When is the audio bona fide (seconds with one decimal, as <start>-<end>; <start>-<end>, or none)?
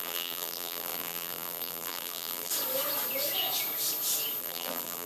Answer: 2.5-4.4